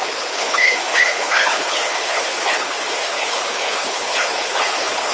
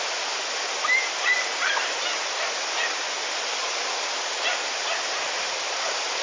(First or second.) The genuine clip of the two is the second